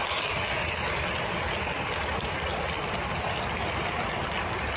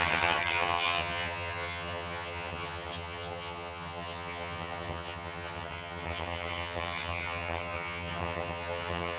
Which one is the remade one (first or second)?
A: second